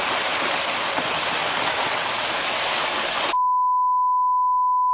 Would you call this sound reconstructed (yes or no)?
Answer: no